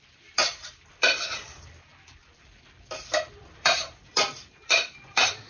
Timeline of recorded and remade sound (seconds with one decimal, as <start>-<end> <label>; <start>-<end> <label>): 0.0-5.5 remade